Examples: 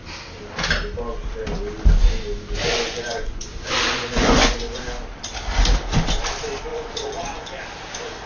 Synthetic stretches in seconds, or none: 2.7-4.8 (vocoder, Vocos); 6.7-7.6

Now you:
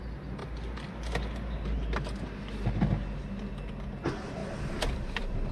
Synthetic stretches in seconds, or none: 4.4-5.5 (vocoder, BigVGAN v2)

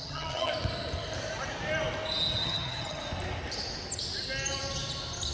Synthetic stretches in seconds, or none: 0.0-0.5 (vocoder, HiFi-GAN); 2.4-3.0

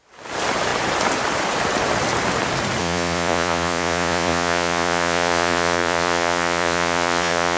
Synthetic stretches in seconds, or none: 2.8-7.6 (vocoder, Vocos)

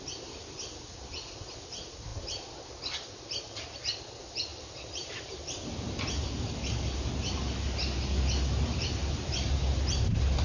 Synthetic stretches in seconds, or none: 4.5-5.4 (vocoder, BigVGAN v2)

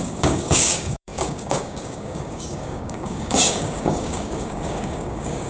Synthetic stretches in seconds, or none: 0.0-5.5 (codec, DAC)